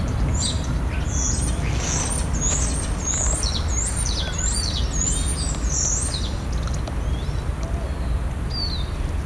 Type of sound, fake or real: real